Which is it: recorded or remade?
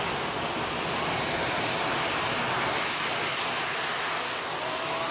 recorded